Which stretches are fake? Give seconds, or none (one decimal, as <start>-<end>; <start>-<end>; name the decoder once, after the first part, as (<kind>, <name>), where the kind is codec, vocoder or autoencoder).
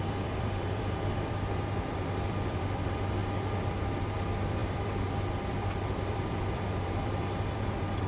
0.0-3.2 (vocoder, BigVGAN v2); 3.7-8.1